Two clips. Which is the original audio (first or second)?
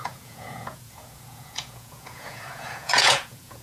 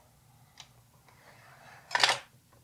second